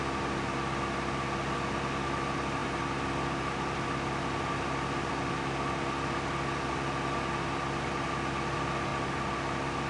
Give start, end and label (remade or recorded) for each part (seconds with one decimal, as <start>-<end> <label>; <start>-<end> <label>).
0.0-9.9 recorded